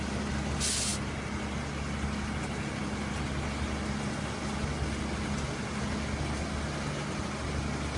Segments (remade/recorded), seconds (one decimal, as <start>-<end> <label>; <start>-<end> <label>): 0.0-8.0 recorded